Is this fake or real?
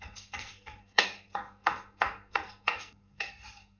fake